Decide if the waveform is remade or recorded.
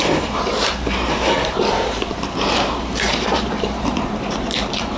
remade